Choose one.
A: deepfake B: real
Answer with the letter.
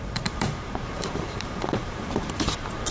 A